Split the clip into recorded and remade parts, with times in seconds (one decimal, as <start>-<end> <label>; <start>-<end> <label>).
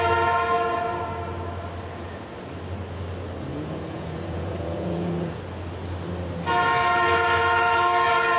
0.0-3.5 recorded; 3.5-5.4 remade; 5.4-8.4 recorded